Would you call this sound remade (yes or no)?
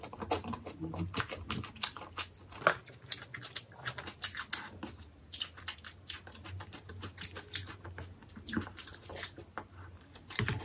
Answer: no